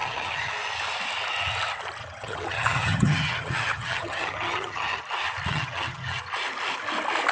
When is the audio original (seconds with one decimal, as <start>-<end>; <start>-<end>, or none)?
0.5-2.0; 5.0-5.5; 6.2-7.3